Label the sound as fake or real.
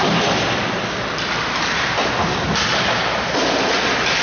real